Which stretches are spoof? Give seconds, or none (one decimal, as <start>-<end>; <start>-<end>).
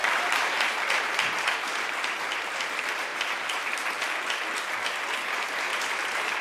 0.0-2.3; 5.7-6.4